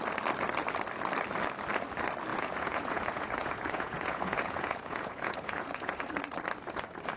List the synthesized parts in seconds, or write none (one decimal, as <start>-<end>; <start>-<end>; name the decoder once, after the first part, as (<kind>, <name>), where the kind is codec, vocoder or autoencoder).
2.3-6.1 (vocoder, Vocos)